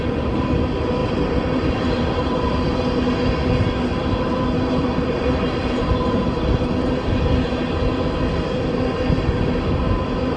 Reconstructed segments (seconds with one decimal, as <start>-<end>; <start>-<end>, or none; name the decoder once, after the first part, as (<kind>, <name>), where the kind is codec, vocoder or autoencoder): 1.0-2.8 (vocoder, BigVGAN v2); 4.9-6.7